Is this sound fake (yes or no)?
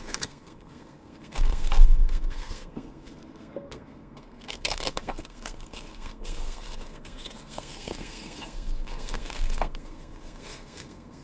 yes